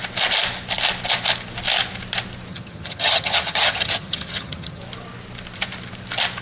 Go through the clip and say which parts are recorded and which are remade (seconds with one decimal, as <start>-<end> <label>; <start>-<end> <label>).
0.0-2.5 recorded; 2.5-4.8 remade; 4.8-6.4 recorded